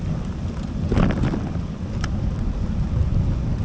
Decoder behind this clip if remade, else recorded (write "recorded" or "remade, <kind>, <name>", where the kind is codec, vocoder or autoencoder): recorded